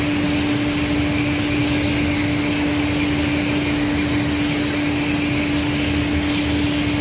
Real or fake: real